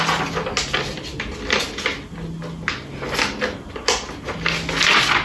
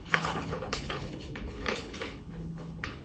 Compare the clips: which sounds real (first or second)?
first